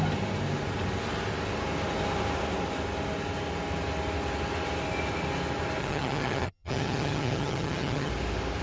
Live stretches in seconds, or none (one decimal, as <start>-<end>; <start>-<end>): 0.0-5.8; 8.1-8.6